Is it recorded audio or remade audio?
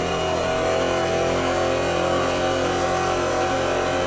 recorded